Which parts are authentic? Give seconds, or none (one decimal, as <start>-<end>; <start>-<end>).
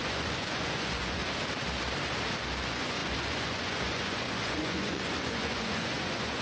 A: 1.2-2.6